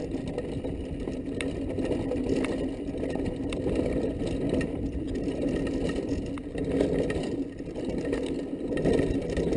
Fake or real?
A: real